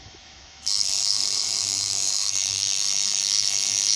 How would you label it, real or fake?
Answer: fake